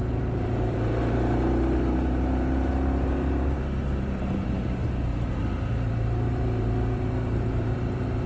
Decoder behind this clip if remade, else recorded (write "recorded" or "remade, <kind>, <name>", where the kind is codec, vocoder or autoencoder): remade, vocoder, BigVGAN v2